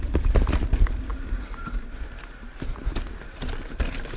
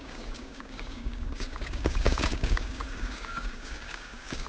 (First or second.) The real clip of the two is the first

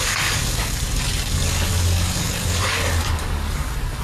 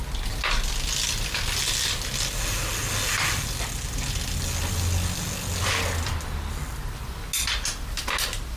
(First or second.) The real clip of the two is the second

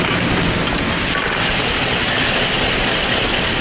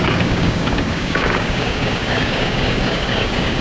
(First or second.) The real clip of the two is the first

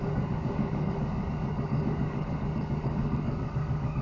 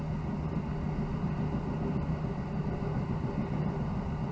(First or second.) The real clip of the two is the second